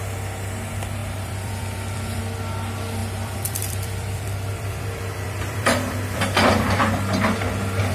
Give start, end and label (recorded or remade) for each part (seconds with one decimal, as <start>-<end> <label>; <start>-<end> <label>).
0.0-1.0 recorded; 1.0-2.2 remade; 2.2-3.0 recorded; 3.0-6.2 remade; 6.2-7.9 recorded